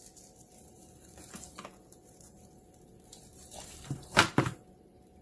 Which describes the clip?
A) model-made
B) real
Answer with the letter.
A